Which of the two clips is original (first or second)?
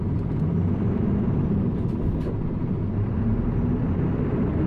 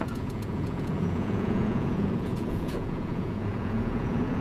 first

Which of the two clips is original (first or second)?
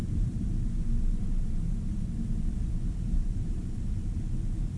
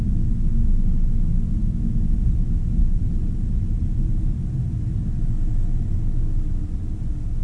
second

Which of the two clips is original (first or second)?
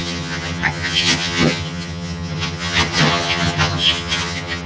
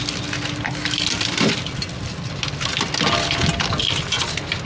second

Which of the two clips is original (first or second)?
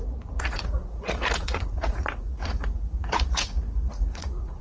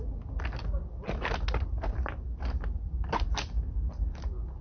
second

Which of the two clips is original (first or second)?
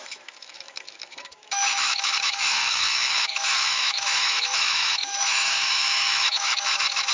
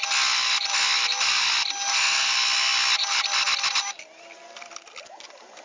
second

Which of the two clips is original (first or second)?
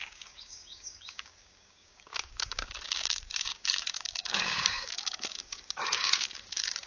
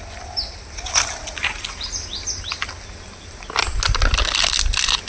second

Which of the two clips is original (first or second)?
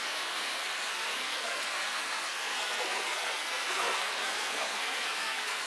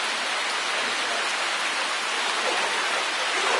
second